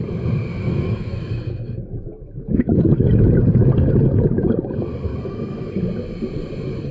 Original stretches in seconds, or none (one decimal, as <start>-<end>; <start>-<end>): 0.0-0.5; 3.1-5.1; 5.8-6.9